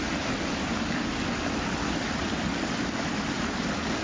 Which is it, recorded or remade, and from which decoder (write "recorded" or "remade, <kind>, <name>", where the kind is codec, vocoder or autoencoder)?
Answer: recorded